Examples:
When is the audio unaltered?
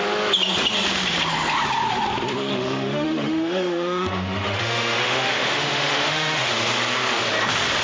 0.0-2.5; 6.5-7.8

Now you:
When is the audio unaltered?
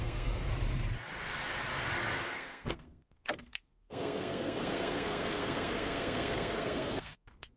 0.5-2.2